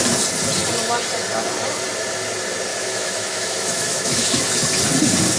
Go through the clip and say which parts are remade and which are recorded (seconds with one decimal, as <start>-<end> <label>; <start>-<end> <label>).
0.0-2.7 recorded; 2.7-4.4 remade; 4.4-5.4 recorded

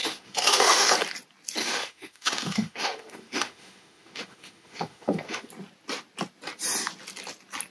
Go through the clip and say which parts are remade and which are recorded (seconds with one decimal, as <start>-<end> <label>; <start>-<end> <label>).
0.0-0.9 remade; 0.9-1.6 recorded; 1.6-5.5 remade; 5.5-7.7 recorded

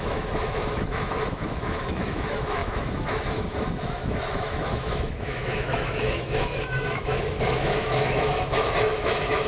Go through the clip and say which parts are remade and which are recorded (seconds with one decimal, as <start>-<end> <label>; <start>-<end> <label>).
0.0-9.5 remade

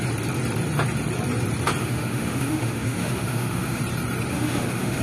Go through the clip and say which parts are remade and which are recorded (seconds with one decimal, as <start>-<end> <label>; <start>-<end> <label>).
0.0-1.8 recorded; 1.8-3.8 remade; 3.8-4.3 recorded; 4.3-5.0 remade

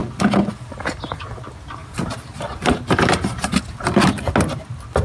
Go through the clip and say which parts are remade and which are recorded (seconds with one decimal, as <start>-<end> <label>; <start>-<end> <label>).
0.0-5.0 recorded

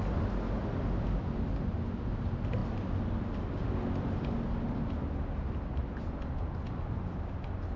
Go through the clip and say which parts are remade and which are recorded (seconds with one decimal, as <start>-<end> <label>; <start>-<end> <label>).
0.0-7.8 recorded

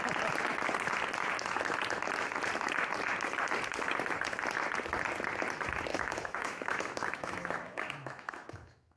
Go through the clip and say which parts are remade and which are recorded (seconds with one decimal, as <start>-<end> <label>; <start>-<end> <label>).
0.0-5.9 recorded; 5.9-9.0 remade

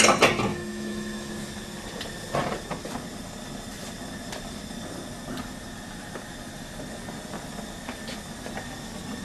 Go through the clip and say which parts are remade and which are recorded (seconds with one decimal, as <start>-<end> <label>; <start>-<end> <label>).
0.0-0.5 recorded; 0.5-1.3 remade; 1.3-9.2 recorded